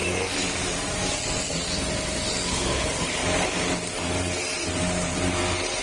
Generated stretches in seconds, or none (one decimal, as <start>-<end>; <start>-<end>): 2.5-3.2